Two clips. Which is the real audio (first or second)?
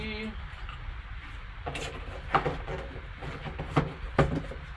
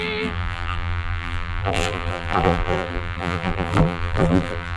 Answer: first